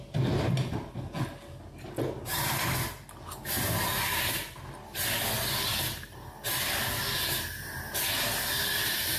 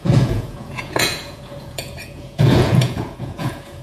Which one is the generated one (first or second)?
second